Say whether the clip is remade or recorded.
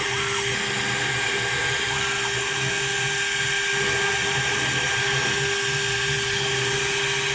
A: recorded